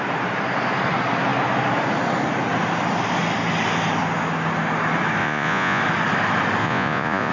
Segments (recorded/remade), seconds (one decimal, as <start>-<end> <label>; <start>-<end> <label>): 0.0-5.2 recorded; 5.2-5.8 remade; 5.8-6.6 recorded; 6.6-7.3 remade